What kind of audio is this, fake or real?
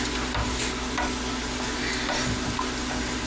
real